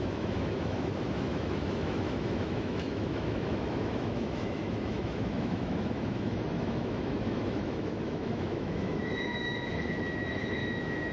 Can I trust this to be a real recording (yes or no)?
no